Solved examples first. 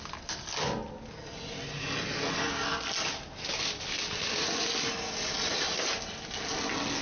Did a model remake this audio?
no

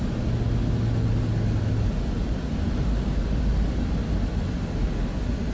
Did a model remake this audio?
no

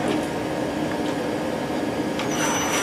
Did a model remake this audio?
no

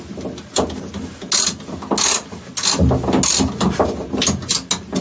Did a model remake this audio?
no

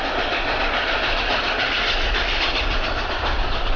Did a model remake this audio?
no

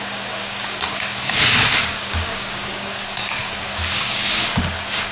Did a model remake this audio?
yes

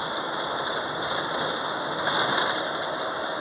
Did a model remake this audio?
no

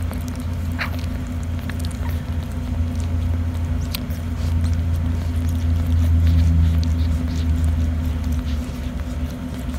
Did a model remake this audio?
no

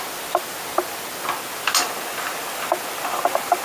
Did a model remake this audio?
no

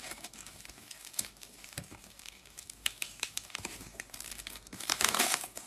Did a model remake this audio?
yes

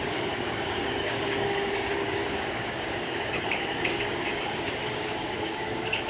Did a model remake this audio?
yes